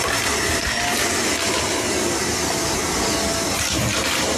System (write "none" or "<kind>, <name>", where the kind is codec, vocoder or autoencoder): none